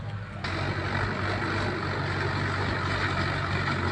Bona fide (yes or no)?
yes